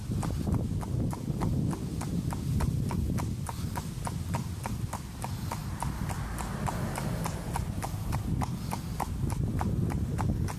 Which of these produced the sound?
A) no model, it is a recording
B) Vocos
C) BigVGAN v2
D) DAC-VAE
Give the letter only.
A